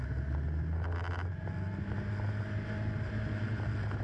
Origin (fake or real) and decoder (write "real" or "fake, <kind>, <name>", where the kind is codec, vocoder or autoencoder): real